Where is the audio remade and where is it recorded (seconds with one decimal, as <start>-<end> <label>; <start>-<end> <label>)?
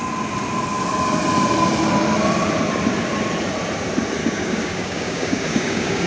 0.0-4.2 recorded; 4.2-6.1 remade